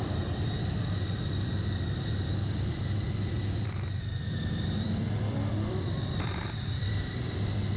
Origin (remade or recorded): remade